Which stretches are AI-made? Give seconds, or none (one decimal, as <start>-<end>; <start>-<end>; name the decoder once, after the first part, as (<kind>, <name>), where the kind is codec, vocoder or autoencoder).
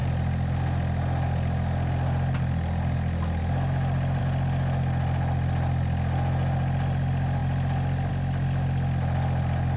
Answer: none